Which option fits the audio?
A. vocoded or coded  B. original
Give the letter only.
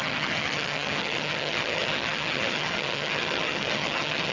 A